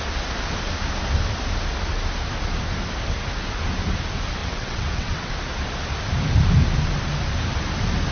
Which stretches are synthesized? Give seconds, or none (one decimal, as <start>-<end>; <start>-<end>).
4.4-5.3